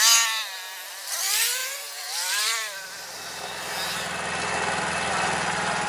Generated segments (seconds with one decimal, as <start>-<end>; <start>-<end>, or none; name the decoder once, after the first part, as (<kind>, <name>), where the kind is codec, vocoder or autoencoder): none

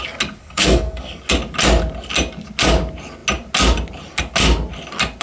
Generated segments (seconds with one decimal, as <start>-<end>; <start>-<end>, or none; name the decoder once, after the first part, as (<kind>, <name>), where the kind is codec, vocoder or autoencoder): 0.4-1.2 (codec, SNAC)

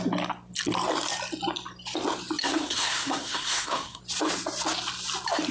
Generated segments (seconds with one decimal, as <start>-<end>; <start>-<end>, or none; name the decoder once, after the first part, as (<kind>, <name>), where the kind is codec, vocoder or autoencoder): 2.4-4.0 (codec, SNAC)

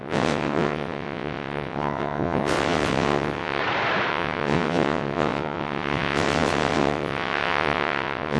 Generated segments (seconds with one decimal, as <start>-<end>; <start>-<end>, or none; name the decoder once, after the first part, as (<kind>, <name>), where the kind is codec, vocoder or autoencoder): 0.0-3.6 (vocoder, WaveNeXt); 4.1-8.4